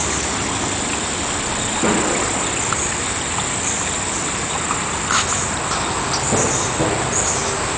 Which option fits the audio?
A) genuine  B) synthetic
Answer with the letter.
A